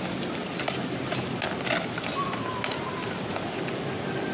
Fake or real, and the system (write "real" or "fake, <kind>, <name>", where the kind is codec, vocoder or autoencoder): real